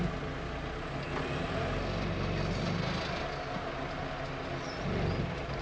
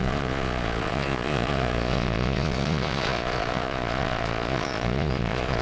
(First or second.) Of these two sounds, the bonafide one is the first